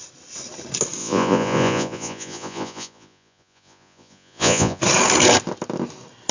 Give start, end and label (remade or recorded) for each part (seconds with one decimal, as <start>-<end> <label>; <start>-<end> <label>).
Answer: 0.0-1.0 recorded; 1.0-4.8 remade; 4.8-6.3 recorded